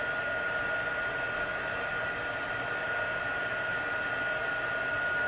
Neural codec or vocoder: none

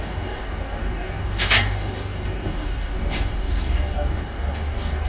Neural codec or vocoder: codec, DAC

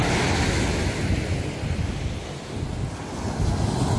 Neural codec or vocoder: none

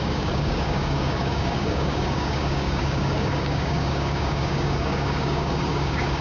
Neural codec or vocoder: codec, DAC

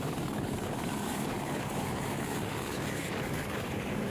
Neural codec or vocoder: codec, DAC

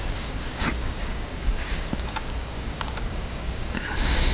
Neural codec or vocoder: codec, DAC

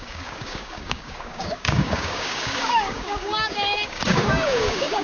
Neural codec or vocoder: codec, DAC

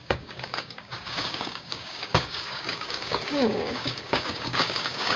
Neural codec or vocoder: codec, DAC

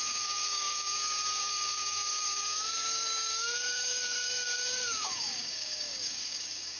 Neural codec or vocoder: codec, DAC